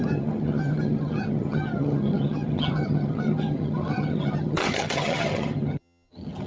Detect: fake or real fake